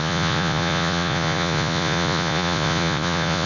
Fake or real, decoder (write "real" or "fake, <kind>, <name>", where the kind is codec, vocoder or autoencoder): fake, vocoder, Vocos